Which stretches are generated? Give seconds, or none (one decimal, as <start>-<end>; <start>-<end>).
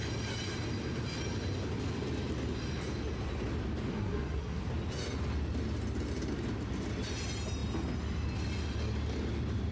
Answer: 3.9-4.6